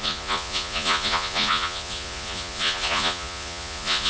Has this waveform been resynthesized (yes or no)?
yes